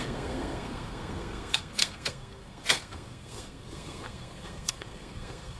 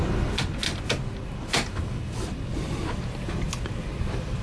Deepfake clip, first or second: first